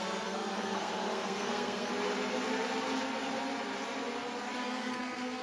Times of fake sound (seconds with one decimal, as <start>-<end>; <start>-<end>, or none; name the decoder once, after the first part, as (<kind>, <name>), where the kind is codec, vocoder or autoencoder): 0.0-1.9 (codec, SNAC); 4.6-5.4